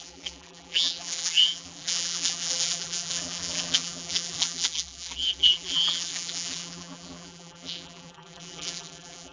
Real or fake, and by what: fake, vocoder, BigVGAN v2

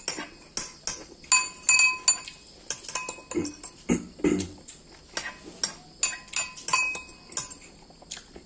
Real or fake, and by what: real